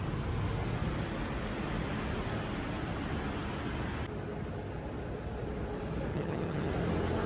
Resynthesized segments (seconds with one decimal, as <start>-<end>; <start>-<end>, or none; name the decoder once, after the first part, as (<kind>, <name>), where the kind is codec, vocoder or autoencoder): 6.1-6.7 (vocoder, HiFi-GAN)